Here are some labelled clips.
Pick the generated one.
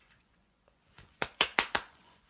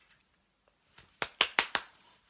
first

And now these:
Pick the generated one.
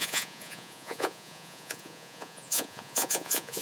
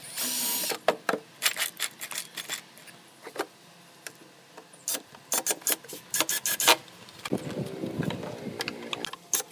first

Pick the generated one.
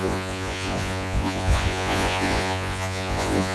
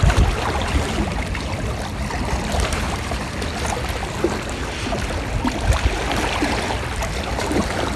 first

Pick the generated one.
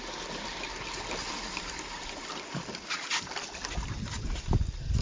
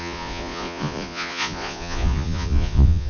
second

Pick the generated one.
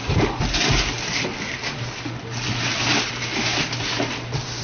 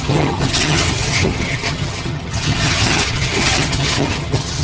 second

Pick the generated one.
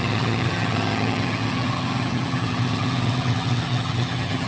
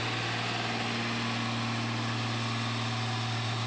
first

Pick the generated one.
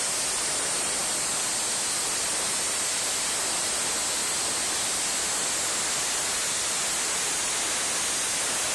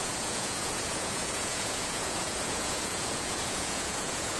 second